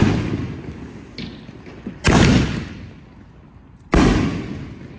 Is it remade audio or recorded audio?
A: recorded